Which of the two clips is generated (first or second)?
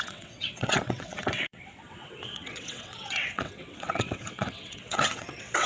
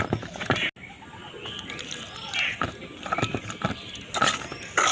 first